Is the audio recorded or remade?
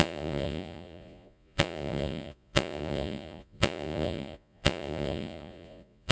remade